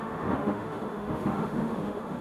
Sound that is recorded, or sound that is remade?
remade